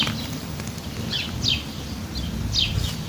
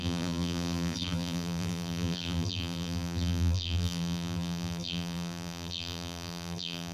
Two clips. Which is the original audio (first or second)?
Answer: first